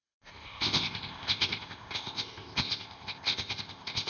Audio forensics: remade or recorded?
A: remade